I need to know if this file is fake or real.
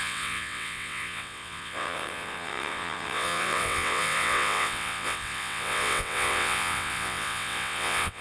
fake